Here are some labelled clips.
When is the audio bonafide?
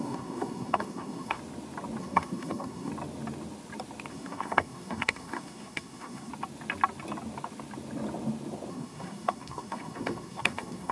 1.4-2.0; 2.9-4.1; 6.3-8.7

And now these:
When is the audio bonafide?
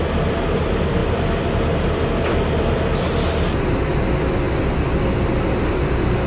0.0-6.3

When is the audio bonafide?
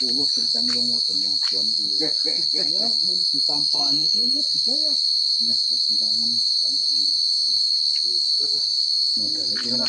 0.0-3.7; 4.4-9.9